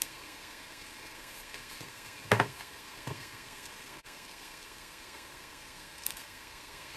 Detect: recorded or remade remade